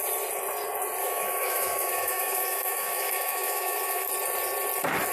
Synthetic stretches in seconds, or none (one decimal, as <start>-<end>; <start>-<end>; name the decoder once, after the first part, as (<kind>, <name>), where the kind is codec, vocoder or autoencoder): 1.0-4.1 (autoencoder, DAC-VAE)

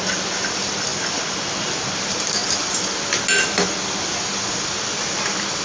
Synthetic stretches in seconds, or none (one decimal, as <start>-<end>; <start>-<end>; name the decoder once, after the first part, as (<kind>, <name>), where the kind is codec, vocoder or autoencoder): none

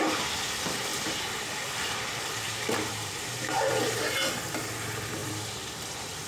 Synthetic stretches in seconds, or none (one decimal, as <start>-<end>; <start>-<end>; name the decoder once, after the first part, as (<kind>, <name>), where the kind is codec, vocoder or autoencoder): 0.9-3.7 (vocoder, BigVGAN v2)